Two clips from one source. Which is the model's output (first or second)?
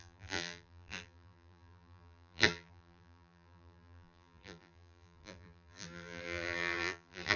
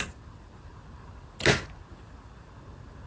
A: first